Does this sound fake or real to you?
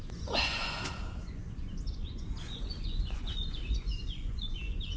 fake